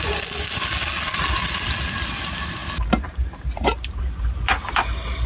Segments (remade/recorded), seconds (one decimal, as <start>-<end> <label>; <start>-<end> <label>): 0.0-5.3 recorded